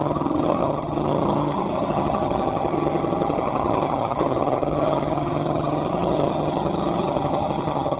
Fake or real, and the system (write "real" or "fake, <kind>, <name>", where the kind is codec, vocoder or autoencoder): fake, vocoder, HiFi-GAN